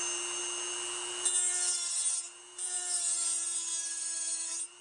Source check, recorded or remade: recorded